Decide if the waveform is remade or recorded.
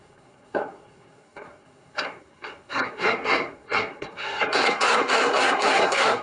remade